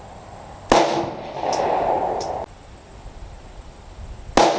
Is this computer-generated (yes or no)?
no